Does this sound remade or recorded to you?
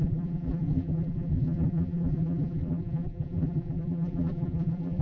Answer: remade